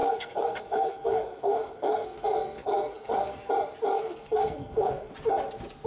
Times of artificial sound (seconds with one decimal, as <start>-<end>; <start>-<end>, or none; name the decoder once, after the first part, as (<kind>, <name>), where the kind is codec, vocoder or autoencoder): 0.0-3.5 (codec, SNAC); 3.9-5.1